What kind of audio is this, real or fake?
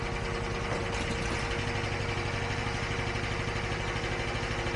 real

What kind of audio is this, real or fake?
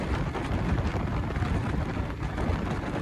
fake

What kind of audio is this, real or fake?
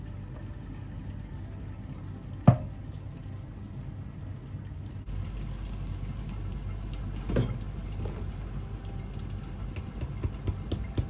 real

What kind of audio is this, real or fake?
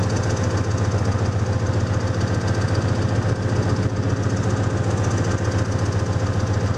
real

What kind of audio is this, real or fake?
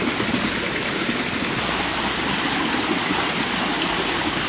real